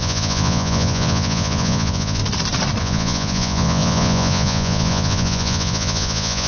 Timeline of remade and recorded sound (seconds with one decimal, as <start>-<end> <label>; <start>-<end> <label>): 0.0-2.2 remade; 2.2-2.8 recorded; 2.8-6.5 remade